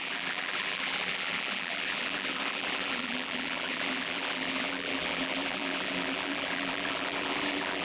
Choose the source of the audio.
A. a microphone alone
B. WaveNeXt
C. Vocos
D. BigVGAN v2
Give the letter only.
D